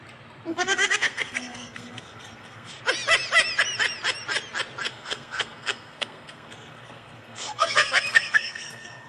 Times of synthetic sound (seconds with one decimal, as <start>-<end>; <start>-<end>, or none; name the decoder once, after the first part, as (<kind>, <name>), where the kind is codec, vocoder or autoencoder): 0.5-2.7 (codec, SNAC); 4.9-9.1

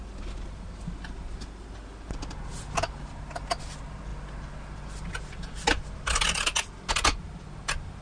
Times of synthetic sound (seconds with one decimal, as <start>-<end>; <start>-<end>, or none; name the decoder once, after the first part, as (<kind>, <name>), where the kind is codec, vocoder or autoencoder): none

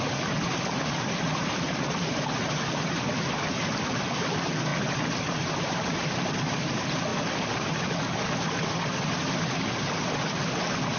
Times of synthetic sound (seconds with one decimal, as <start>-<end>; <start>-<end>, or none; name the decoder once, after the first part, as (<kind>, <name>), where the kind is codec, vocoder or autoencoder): none

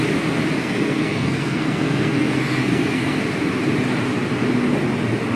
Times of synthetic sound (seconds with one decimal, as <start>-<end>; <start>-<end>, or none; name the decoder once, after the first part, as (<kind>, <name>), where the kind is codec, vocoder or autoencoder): 0.6-3.2 (codec, SNAC)

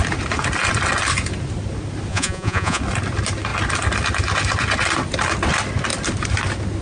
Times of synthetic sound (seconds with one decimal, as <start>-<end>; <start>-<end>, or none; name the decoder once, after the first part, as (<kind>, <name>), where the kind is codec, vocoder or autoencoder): 2.1-2.8 (vocoder, Vocos)

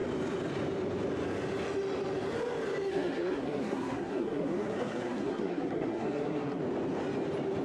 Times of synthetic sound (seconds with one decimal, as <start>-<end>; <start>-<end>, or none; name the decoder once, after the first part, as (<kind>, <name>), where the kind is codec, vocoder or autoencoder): 2.9-6.6 (codec, SNAC)

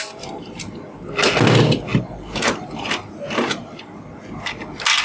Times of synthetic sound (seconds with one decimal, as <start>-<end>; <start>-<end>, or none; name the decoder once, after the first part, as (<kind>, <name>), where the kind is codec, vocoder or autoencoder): 1.9-4.1 (vocoder, BigVGAN v2)

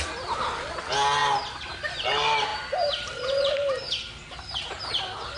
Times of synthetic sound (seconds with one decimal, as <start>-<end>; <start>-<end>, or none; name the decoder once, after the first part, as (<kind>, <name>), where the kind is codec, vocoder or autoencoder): none